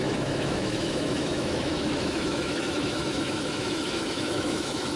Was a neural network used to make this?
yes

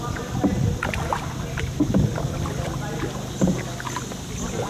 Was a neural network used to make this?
no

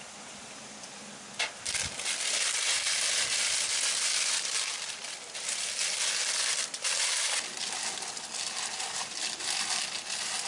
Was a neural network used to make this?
no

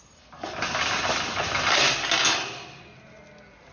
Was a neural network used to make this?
no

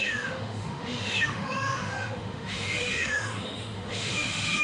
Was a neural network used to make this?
yes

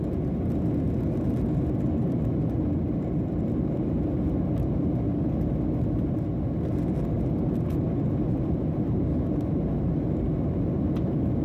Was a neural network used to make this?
no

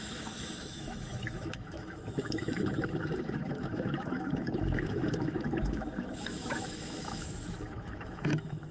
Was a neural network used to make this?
yes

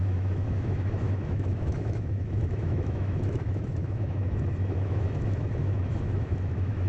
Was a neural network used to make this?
yes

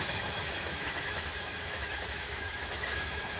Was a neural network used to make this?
yes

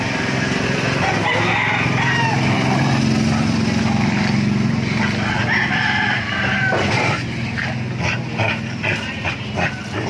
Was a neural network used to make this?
no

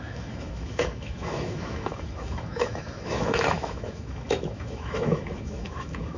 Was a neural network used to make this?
yes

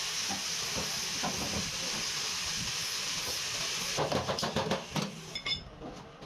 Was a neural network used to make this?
no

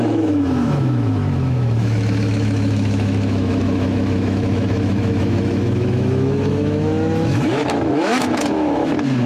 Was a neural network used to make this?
yes